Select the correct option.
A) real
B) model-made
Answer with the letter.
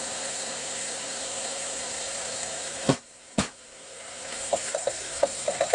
B